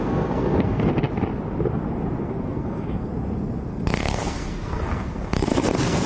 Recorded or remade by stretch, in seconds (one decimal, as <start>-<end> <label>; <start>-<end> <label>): 0.0-0.9 remade; 0.9-2.2 recorded; 2.2-3.1 remade; 3.1-3.7 recorded; 3.7-6.1 remade